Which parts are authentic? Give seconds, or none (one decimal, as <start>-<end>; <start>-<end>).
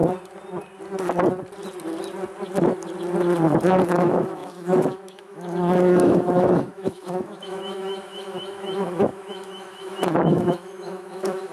0.0-3.9